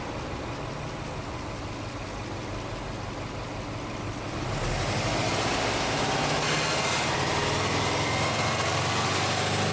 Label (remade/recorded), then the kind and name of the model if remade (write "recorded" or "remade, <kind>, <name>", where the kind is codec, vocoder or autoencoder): recorded